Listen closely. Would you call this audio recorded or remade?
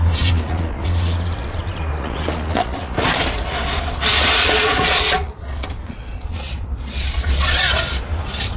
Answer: remade